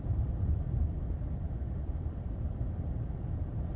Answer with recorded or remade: remade